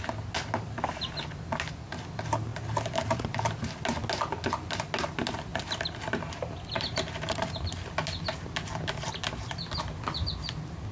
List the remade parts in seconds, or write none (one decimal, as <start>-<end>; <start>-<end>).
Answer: 2.5-3.4; 5.5-7.4